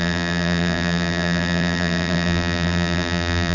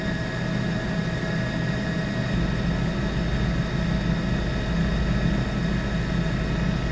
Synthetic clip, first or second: first